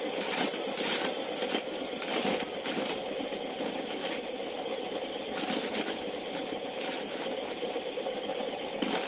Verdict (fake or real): real